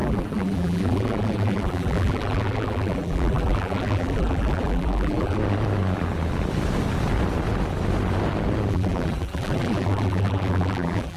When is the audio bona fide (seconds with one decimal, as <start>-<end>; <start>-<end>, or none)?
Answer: 5.4-8.7